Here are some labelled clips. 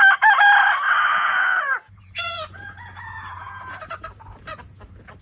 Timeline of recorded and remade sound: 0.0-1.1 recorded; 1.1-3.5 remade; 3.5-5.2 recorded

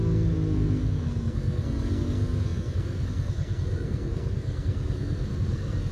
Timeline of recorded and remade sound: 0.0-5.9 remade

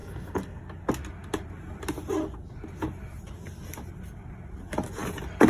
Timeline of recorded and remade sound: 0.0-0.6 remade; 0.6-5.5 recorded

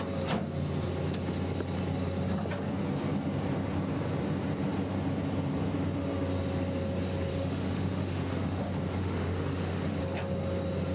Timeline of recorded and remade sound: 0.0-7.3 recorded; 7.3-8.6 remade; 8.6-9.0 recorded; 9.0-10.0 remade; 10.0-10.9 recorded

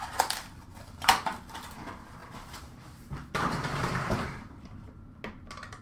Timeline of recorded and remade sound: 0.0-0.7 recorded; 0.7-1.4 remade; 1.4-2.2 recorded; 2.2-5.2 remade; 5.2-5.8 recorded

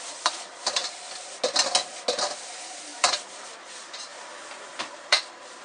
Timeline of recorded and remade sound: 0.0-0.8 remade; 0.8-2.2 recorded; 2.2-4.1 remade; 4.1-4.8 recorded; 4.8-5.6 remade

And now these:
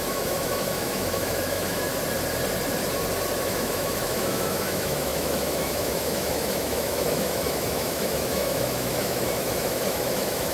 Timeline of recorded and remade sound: 0.0-1.9 remade; 1.9-3.4 recorded; 3.4-10.5 remade

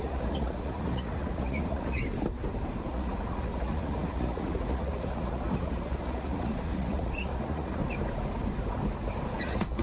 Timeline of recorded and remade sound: 0.0-2.0 remade; 2.0-2.9 recorded; 2.9-7.8 remade; 7.8-9.4 recorded; 9.4-9.8 remade